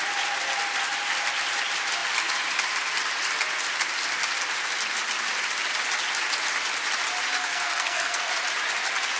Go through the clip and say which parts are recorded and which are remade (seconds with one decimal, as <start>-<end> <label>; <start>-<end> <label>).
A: 0.0-7.5 recorded; 7.5-8.3 remade; 8.3-9.2 recorded